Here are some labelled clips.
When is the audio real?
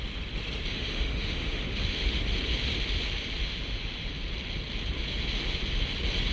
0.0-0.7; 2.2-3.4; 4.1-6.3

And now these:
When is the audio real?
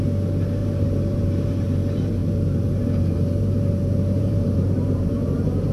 0.0-0.6; 1.2-2.2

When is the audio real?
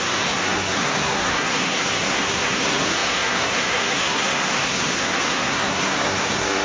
none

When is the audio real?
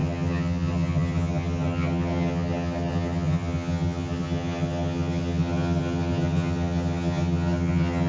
none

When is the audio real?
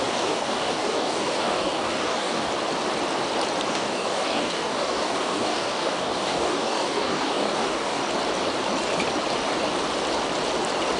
2.5-3.7; 8.0-11.0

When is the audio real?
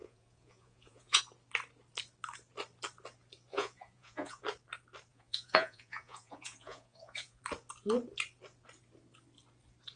1.2-3.5; 4.4-5.1; 7.4-10.0